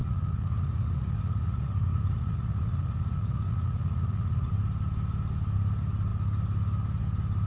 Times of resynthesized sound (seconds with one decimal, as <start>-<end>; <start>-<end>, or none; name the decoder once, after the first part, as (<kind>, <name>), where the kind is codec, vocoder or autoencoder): 0.0-4.5 (vocoder, Vocos)

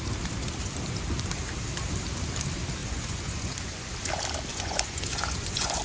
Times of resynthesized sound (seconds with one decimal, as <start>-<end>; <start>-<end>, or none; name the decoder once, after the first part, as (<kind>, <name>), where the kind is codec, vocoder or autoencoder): 2.8-3.9 (vocoder, Vocos); 4.5-5.8